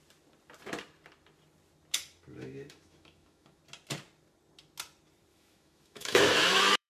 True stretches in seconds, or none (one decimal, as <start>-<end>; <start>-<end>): 0.0-2.3; 3.6-5.3

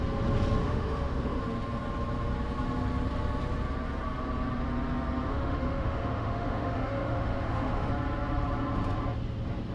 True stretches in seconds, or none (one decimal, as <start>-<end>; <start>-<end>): 0.0-0.6; 1.4-5.3; 7.9-9.7

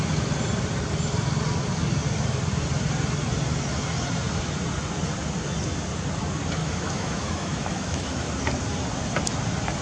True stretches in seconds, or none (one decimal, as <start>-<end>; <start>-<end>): 0.0-6.6; 8.3-9.8

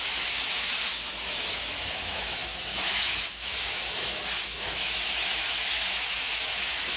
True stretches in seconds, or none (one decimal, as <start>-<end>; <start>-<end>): none

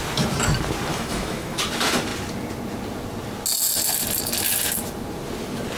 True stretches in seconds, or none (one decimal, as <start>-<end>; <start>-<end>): 0.0-0.9; 1.6-5.8

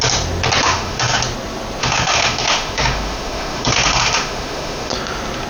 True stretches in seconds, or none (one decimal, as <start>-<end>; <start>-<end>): 0.0-0.6; 1.2-1.8; 4.9-5.5

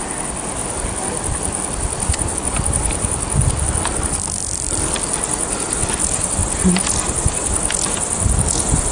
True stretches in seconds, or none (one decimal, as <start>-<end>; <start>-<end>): 0.0-8.9